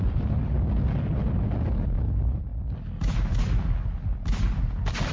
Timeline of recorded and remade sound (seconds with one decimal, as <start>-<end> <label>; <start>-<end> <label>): 0.0-5.1 recorded